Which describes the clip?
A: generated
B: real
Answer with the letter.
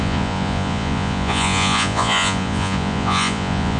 A